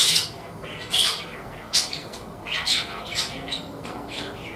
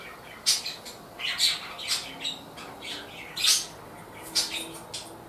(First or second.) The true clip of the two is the second